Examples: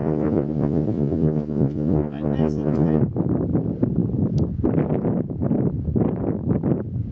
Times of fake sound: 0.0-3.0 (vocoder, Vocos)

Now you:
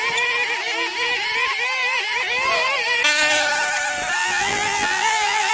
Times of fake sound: 4.2-5.5 (vocoder, BigVGAN v2)

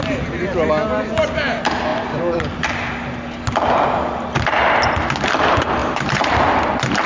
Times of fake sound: 5.8-7.1 (vocoder, BigVGAN v2)

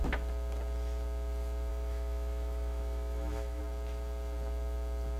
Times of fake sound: 1.7-3.6 (autoencoder, DAC-VAE)

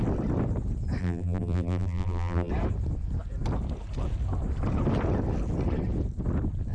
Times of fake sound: 1.0-2.5 (vocoder, BigVGAN v2)

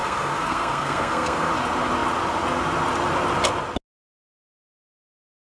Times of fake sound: 0.0-1.5 (codec, SNAC)

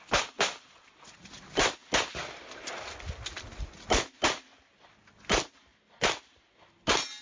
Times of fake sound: none